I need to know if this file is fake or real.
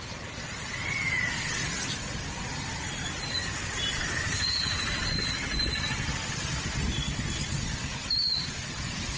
real